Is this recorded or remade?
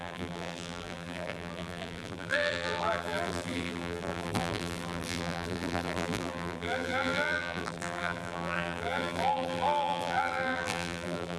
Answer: remade